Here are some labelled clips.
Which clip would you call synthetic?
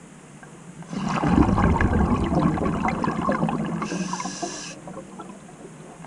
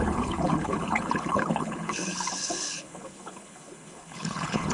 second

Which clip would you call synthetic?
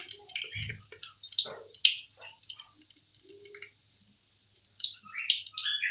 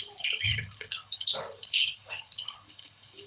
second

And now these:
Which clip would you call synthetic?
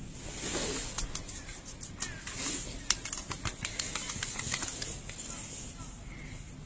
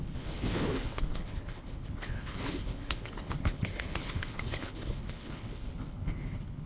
second